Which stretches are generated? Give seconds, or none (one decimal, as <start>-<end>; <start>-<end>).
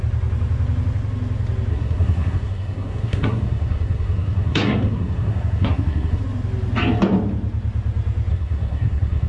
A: 1.7-6.2; 8.3-9.3